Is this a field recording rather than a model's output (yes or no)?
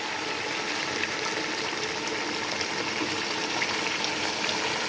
yes